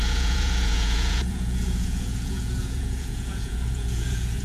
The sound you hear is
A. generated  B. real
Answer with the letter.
A